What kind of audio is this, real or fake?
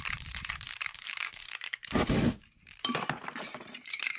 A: fake